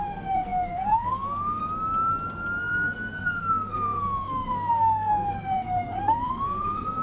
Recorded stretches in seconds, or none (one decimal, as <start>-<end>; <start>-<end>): 1.6-2.6